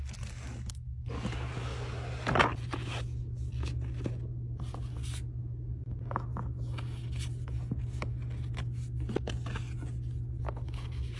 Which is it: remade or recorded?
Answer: recorded